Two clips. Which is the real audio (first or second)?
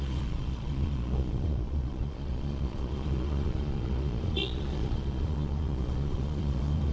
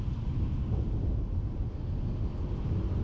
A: second